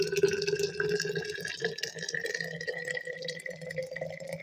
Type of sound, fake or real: real